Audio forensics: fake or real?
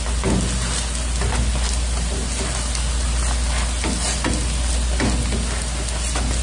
real